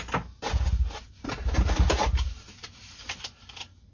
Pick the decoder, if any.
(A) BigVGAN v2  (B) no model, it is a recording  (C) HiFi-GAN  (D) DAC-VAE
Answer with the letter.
B